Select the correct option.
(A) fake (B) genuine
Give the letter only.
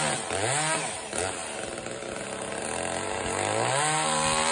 B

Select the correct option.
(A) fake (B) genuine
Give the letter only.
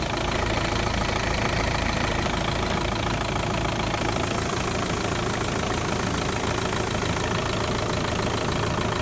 B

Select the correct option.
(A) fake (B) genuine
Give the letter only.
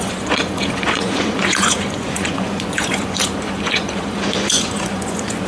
A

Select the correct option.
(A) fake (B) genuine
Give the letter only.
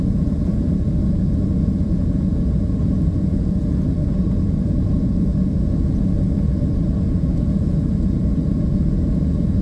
A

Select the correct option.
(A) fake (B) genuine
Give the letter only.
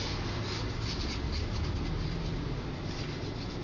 B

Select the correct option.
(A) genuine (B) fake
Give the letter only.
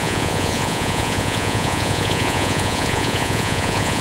B